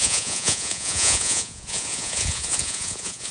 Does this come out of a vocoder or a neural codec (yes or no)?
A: yes